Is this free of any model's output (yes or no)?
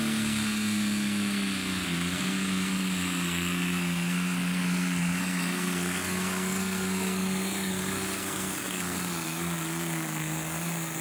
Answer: no